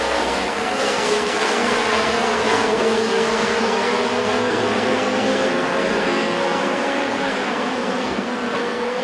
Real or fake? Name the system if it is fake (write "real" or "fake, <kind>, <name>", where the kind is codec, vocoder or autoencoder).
fake, codec, SNAC